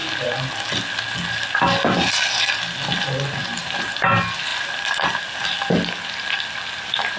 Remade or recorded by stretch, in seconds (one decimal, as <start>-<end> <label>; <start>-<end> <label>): 0.0-7.2 recorded